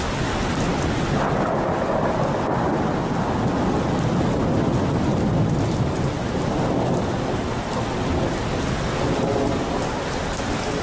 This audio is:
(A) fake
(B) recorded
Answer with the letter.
B